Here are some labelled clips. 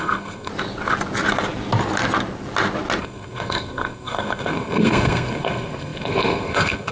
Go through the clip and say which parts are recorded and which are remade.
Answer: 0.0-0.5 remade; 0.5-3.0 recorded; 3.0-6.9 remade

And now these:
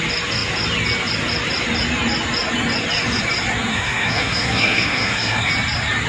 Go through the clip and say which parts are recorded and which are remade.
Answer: 0.0-3.7 recorded; 3.7-5.5 remade; 5.5-6.1 recorded

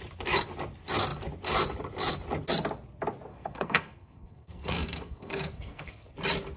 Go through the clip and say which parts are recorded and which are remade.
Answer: 0.0-3.3 recorded; 3.3-6.1 remade; 6.1-6.6 recorded

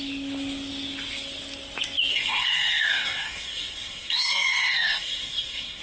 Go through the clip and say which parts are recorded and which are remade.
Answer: 0.0-2.1 recorded; 2.1-5.8 remade

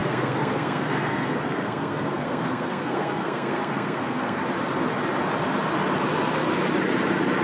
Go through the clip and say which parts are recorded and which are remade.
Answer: 0.0-4.4 remade; 4.4-7.4 recorded

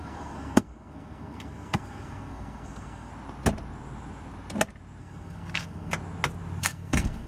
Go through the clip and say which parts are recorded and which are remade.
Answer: 0.0-3.1 remade; 3.1-5.0 recorded; 5.0-5.9 remade; 5.9-6.6 recorded; 6.6-7.3 remade

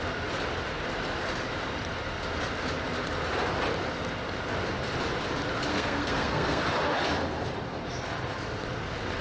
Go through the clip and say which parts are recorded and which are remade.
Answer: 0.0-5.7 recorded; 5.7-6.6 remade; 6.6-9.2 recorded